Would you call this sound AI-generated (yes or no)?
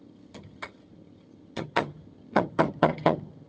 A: yes